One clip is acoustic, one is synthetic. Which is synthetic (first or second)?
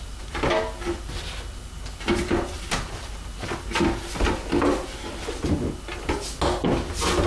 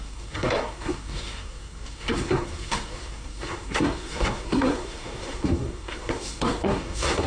second